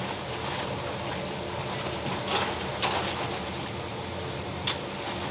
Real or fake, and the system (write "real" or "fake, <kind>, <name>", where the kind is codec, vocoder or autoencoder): real